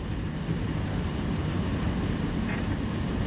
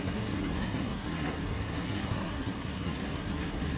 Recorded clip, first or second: first